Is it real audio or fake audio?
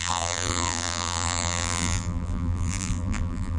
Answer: fake